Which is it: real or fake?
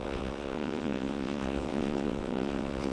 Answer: fake